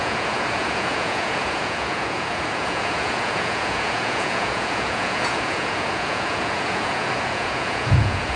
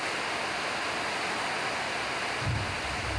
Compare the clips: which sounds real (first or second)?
second